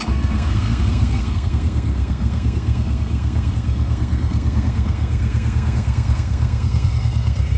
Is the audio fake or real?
fake